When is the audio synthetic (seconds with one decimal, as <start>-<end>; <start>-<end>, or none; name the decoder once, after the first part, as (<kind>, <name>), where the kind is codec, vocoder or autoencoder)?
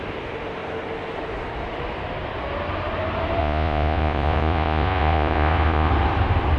3.4-5.9 (vocoder, Vocos)